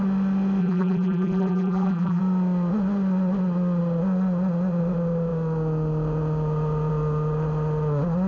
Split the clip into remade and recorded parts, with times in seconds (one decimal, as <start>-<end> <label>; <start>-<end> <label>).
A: 0.0-0.6 recorded; 0.6-2.2 remade; 2.2-8.3 recorded